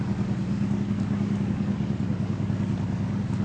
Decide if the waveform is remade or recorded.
remade